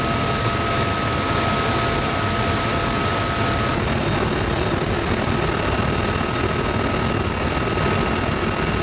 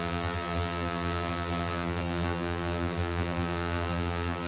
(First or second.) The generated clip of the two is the second